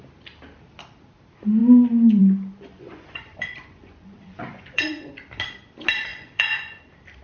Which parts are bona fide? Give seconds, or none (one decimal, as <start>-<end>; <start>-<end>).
0.0-2.7; 5.1-6.1; 6.8-7.2